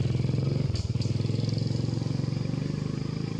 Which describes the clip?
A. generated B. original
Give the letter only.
B